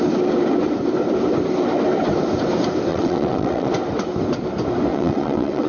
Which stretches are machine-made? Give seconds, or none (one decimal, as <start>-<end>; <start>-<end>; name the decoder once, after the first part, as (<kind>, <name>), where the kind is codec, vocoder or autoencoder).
2.9-3.7 (vocoder, WaveNeXt); 4.9-5.7